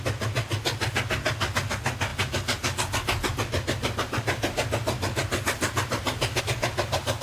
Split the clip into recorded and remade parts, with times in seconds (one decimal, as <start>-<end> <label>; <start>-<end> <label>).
0.0-7.2 recorded

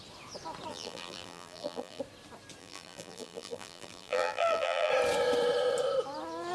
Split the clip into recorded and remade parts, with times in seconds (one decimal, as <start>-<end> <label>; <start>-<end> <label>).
0.0-0.7 recorded; 0.7-2.0 remade; 2.0-2.6 recorded; 2.6-4.9 remade; 4.9-6.5 recorded

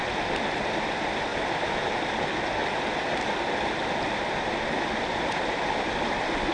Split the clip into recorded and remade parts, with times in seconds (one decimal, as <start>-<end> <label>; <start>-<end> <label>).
0.0-1.3 recorded; 1.3-1.9 remade; 1.9-2.6 recorded; 2.6-4.8 remade; 4.8-6.5 recorded